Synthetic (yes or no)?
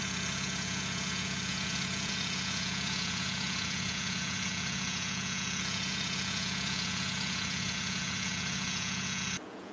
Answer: yes